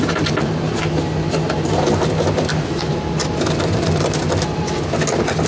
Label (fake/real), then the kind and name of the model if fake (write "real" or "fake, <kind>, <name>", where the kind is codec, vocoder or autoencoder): fake, vocoder, BigVGAN v2